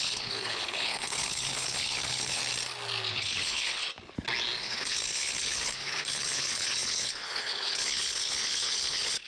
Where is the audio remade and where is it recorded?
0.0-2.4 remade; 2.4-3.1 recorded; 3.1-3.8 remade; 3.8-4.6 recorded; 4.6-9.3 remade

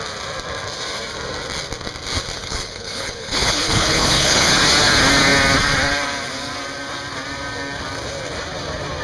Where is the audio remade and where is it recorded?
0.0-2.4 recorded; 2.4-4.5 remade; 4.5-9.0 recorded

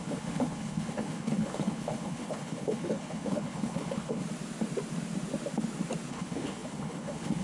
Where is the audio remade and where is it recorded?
0.0-4.2 remade; 4.2-6.1 recorded; 6.1-7.4 remade